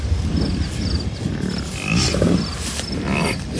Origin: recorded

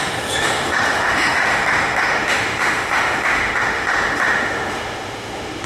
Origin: remade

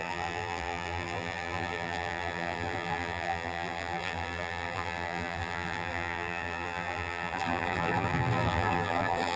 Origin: remade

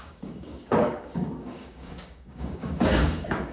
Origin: remade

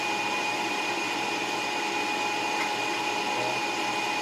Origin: recorded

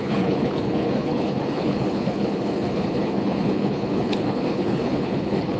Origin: remade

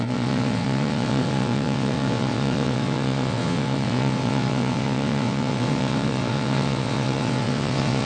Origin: remade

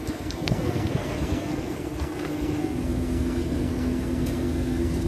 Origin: remade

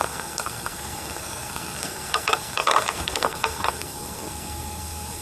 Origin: remade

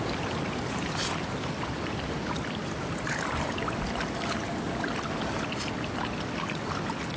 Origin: recorded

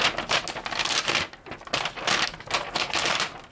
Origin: recorded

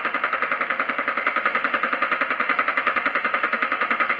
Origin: remade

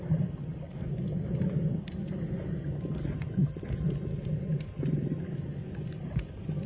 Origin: recorded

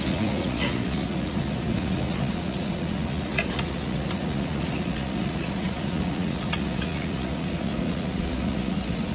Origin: remade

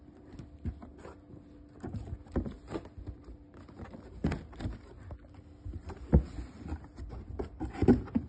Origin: recorded